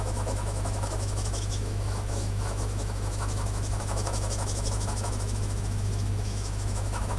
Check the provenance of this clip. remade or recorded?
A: remade